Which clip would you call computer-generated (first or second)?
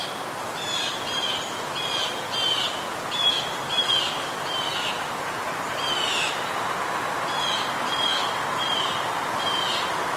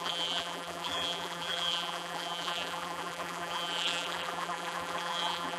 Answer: second